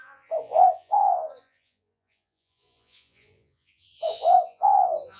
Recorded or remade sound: remade